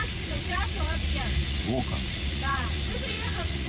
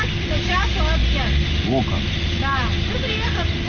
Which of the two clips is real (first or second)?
second